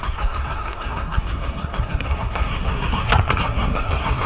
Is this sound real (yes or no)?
no